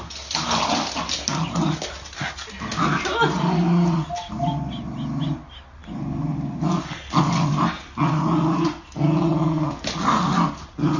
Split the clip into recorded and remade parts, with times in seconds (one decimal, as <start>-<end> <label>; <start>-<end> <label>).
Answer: 0.0-11.0 recorded